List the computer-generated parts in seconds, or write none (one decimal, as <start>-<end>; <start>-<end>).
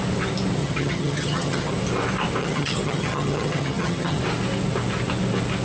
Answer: 0.6-1.7; 2.4-4.2